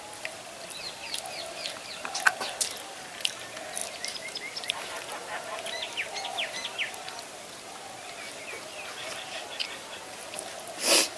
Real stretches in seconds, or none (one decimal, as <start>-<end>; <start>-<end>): 0.0-11.2